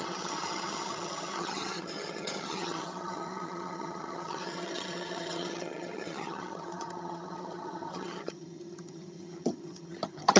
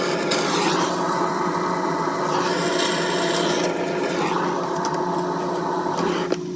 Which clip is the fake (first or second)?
first